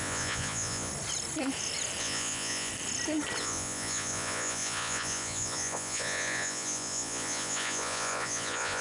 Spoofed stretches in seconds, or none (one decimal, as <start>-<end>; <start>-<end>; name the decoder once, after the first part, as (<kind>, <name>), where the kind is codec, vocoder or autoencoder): 0.0-0.9 (vocoder, Vocos); 2.0-2.7; 3.4-8.8